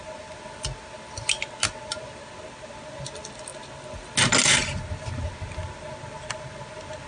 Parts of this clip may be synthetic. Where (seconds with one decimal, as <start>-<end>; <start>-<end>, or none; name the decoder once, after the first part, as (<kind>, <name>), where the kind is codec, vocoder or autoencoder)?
none